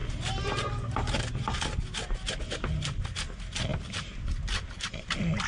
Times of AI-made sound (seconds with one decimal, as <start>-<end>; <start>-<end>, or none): none